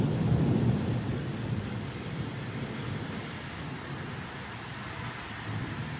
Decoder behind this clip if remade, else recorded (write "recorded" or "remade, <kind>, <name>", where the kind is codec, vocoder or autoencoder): recorded